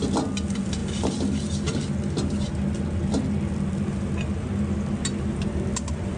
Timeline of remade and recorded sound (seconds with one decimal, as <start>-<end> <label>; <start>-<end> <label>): 0.0-6.2 recorded